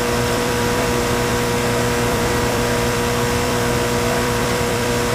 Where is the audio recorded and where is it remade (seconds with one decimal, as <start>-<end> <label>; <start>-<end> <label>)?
0.0-5.1 remade